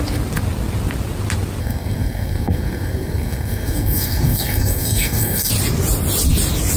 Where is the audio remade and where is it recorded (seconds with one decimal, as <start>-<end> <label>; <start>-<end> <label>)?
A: 0.0-1.6 recorded; 1.6-5.5 remade; 5.5-6.8 recorded